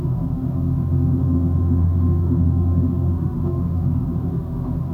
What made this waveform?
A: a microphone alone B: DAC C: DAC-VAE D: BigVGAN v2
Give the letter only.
C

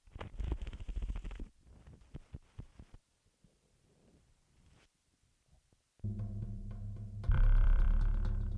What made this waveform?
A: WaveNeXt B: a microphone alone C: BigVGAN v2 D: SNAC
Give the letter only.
C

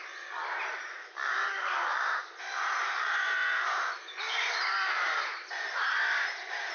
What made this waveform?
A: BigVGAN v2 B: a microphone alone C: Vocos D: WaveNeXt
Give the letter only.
B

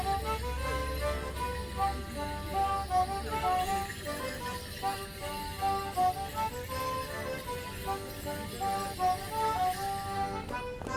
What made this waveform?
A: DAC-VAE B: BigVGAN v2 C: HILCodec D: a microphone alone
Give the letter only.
D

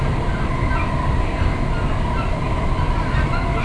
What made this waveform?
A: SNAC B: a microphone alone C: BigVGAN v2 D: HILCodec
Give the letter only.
B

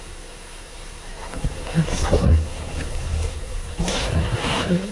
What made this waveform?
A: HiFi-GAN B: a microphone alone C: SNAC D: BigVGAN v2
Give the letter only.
C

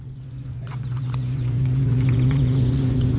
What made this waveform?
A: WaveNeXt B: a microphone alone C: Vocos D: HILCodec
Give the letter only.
C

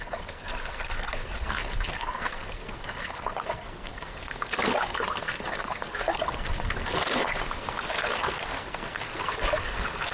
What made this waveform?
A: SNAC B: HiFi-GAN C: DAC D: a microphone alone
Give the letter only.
A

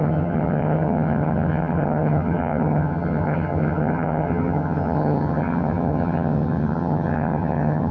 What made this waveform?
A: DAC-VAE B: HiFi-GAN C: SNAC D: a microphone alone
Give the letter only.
B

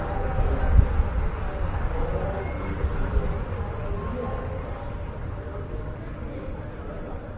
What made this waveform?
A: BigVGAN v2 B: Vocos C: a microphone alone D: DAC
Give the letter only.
C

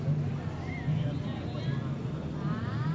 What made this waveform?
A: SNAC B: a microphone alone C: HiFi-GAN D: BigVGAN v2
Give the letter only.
B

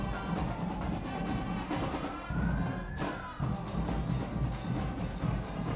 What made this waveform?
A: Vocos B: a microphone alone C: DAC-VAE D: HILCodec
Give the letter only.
B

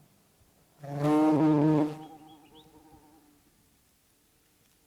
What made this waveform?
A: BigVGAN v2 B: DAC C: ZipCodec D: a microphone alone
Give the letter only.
D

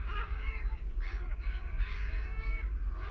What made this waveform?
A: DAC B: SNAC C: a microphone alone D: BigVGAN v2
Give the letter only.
A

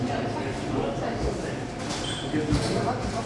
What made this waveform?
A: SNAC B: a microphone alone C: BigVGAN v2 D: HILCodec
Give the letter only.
B